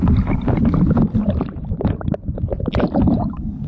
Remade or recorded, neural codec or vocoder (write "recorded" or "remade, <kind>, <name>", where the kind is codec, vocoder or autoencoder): recorded